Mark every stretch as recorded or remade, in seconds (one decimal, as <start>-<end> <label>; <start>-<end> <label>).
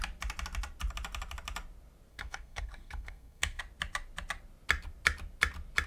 0.0-2.1 recorded; 2.1-3.6 remade; 3.6-5.9 recorded